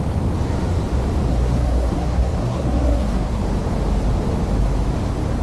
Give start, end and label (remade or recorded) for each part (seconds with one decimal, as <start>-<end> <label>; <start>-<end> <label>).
0.0-1.3 recorded; 1.3-3.4 remade; 3.4-5.4 recorded